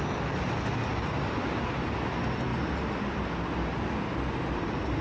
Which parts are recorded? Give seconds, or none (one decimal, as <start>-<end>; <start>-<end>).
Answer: 0.0-5.0